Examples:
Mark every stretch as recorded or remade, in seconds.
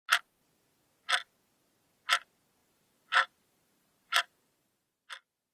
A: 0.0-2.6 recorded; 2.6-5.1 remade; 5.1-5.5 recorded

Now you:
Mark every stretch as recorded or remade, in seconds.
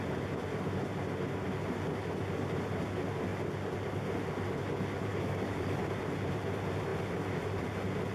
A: 0.0-5.1 recorded; 5.1-5.8 remade; 5.8-8.1 recorded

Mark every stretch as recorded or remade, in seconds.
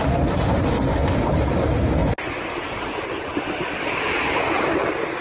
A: 0.0-5.2 recorded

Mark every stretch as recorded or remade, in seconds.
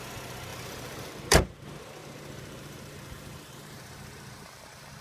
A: 0.0-0.5 recorded; 0.5-1.5 remade; 1.5-2.0 recorded; 2.0-5.0 remade